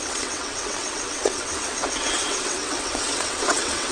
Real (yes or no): no